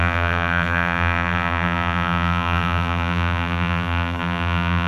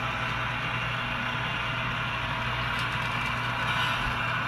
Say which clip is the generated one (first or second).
first